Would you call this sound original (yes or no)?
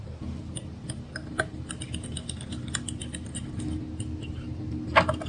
yes